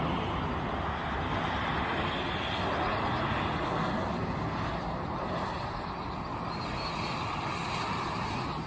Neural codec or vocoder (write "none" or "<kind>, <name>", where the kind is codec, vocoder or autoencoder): none